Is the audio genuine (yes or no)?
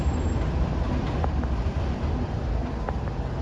yes